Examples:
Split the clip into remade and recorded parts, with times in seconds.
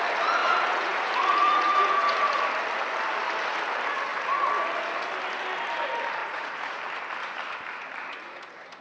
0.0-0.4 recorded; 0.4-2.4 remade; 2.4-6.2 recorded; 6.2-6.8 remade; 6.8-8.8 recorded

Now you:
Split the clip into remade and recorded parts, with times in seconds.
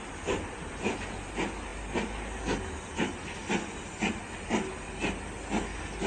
0.0-6.1 recorded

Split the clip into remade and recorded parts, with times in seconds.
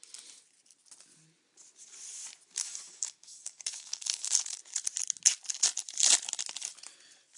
0.0-2.6 recorded; 2.6-4.6 remade; 4.6-7.4 recorded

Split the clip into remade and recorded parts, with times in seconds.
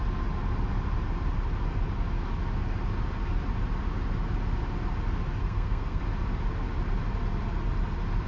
0.0-5.4 recorded; 5.4-6.0 remade; 6.0-8.3 recorded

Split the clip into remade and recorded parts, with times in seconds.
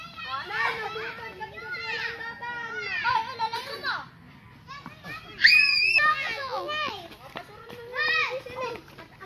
0.0-6.1 recorded; 6.1-6.9 remade; 6.9-9.3 recorded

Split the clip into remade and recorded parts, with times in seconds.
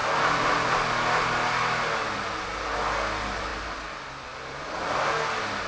0.0-5.7 recorded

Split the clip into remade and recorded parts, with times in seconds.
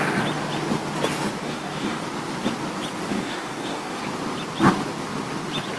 0.0-1.4 recorded; 1.4-2.0 remade; 2.0-3.1 recorded; 3.1-4.0 remade; 4.0-5.8 recorded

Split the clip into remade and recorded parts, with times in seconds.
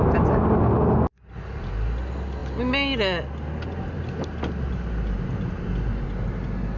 0.0-6.8 recorded